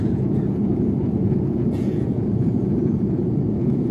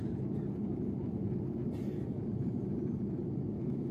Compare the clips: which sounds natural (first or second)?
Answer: second